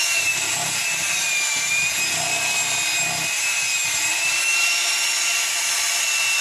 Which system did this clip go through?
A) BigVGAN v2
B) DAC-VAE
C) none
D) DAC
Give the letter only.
C